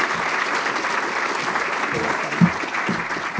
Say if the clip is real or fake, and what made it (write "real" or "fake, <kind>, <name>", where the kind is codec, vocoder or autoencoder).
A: real